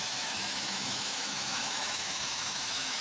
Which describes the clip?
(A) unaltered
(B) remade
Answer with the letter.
B